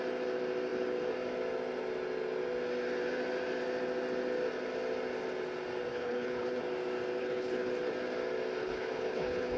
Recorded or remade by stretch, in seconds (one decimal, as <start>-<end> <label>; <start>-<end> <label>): 0.0-5.9 recorded; 5.9-6.6 remade; 6.6-7.2 recorded; 7.2-7.7 remade; 7.7-8.6 recorded; 8.6-9.6 remade